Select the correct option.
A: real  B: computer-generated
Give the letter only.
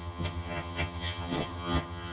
B